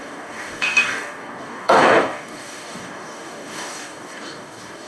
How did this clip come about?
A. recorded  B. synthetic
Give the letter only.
B